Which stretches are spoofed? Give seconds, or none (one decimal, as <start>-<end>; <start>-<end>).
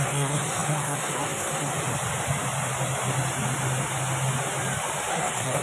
0.0-1.7; 5.1-5.6